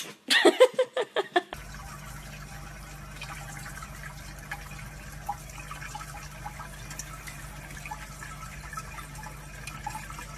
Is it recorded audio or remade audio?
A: recorded